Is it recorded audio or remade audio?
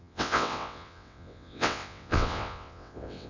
remade